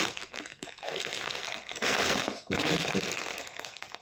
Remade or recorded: remade